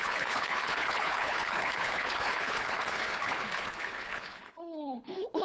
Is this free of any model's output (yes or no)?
no